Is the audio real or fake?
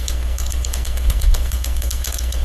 fake